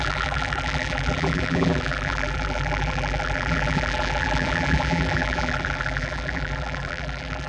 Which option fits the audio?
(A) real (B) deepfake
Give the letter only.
B